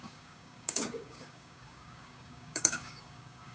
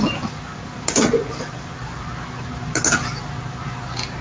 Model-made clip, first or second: first